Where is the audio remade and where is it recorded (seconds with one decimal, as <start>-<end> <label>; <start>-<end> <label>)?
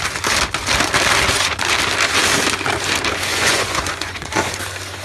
0.0-3.3 recorded; 3.3-4.5 remade; 4.5-5.0 recorded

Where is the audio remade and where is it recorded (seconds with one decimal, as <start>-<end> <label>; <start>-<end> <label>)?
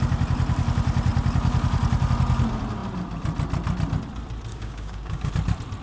0.0-4.5 recorded; 4.5-5.3 remade; 5.3-5.8 recorded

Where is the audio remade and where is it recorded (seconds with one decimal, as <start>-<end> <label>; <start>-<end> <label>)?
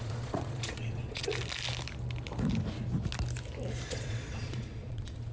0.0-1.3 remade; 1.3-3.9 recorded; 3.9-5.3 remade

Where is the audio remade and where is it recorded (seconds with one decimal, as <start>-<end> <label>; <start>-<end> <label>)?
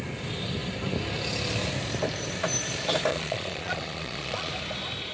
0.0-3.1 recorded; 3.1-4.5 remade; 4.5-5.1 recorded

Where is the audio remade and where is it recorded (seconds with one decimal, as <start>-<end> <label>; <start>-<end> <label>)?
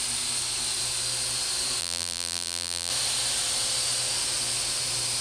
0.0-1.8 recorded; 1.8-2.9 remade; 2.9-5.2 recorded